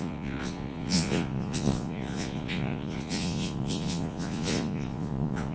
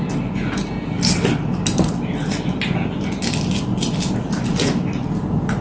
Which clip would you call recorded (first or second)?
second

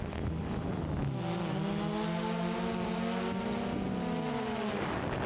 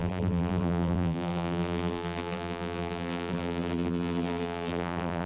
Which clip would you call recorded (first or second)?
first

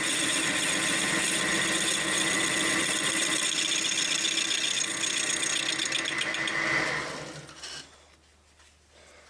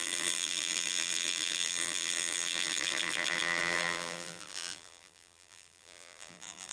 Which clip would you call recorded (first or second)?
first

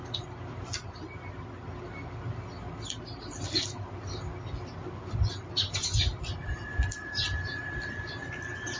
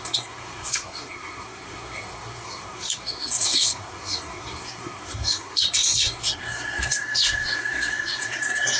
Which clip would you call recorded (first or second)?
first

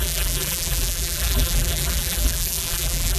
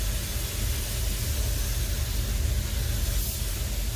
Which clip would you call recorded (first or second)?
second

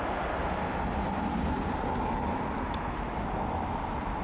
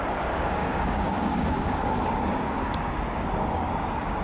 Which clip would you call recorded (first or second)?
first